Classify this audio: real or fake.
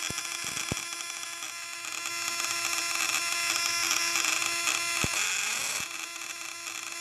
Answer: real